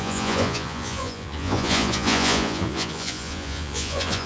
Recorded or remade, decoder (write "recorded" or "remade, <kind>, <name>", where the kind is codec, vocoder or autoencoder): remade, vocoder, Vocos